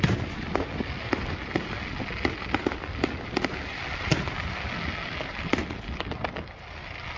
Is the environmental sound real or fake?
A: real